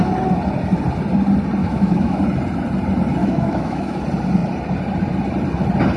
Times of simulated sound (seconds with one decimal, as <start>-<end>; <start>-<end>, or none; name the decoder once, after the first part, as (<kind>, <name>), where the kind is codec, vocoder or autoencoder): 1.6-2.2 (autoencoder, DAC-VAE); 3.2-4.0